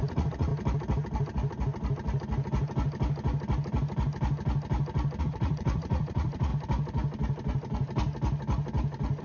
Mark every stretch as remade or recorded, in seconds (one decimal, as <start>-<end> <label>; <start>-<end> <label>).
0.0-0.5 remade; 0.5-5.2 recorded; 5.2-6.5 remade; 6.5-9.2 recorded

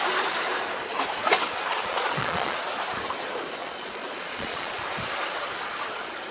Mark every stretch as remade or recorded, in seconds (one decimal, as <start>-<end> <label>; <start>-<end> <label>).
0.0-1.7 recorded; 1.7-2.6 remade; 2.6-3.6 recorded; 3.6-4.8 remade; 4.8-6.3 recorded

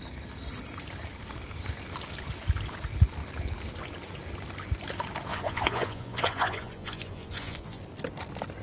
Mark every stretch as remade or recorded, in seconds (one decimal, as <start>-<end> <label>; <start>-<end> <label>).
0.0-5.3 recorded; 5.3-7.8 remade; 7.8-8.6 recorded